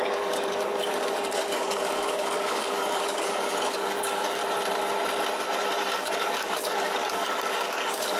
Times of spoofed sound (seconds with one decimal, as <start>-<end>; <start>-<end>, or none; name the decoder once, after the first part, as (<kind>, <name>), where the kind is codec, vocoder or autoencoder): 0.0-4.4 (codec, DAC); 5.9-8.2